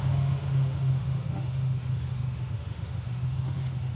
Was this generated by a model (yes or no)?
yes